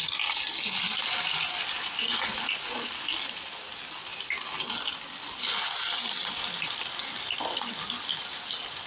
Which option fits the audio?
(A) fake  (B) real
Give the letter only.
B